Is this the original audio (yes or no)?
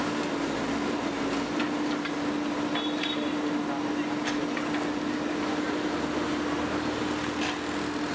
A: yes